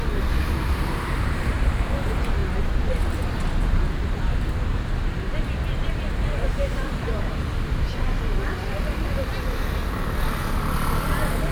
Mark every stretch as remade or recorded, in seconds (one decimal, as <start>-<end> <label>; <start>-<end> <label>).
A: 0.0-9.3 remade; 9.3-11.5 recorded